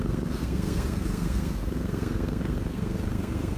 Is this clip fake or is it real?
fake